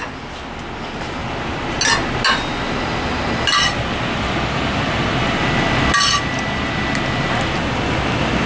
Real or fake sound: real